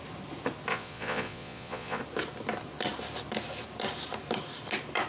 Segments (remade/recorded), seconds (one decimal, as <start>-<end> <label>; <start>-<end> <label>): 0.0-0.7 recorded; 0.7-2.0 remade; 2.0-5.1 recorded